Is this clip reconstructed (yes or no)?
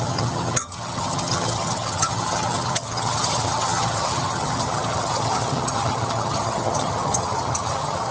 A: yes